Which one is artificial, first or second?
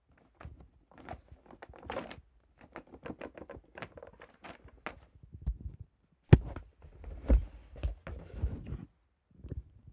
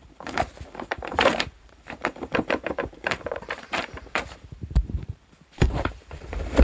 second